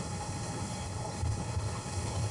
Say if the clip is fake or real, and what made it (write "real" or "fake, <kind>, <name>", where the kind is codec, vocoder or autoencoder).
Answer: fake, codec, HILCodec